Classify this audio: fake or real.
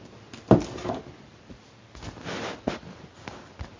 real